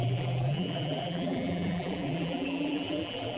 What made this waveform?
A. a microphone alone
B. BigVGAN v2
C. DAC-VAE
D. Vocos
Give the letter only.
B